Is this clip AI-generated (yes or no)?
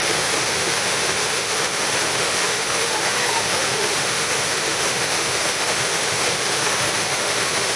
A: yes